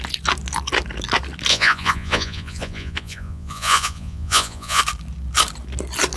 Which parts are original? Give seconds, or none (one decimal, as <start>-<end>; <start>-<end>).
0.0-1.5; 4.8-6.2